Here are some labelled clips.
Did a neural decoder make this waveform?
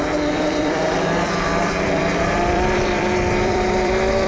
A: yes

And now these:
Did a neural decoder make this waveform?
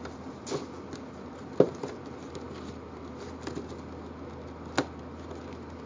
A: no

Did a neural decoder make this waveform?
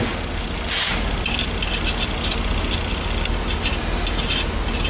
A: no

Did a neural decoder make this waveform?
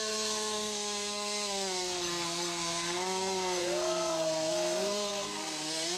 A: yes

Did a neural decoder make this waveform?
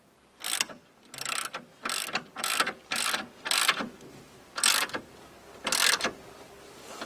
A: no